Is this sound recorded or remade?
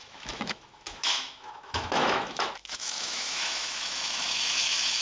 remade